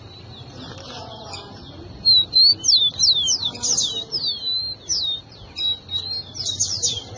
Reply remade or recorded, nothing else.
recorded